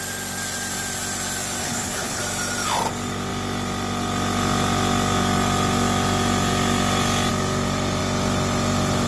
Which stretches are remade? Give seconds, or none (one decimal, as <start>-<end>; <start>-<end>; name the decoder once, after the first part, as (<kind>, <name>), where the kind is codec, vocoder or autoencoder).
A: 1.6-2.2 (codec, HILCodec)